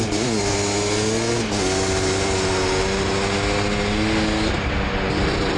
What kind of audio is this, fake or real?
real